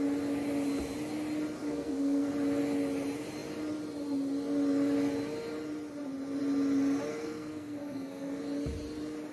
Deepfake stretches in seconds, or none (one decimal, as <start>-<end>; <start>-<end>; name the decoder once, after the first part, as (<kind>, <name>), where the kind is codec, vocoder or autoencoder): 1.7-2.3 (codec, SNAC); 7.1-8.4